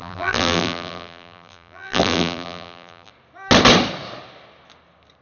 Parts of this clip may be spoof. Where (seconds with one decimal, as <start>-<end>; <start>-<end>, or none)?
0.0-3.1